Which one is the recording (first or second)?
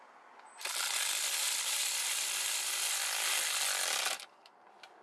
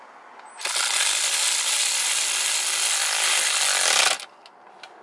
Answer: second